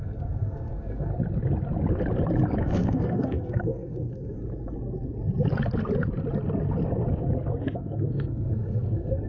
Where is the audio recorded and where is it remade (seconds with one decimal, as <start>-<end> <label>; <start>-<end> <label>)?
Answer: 0.0-1.1 remade; 1.1-2.6 recorded; 2.6-4.4 remade; 4.4-7.7 recorded; 7.7-9.3 remade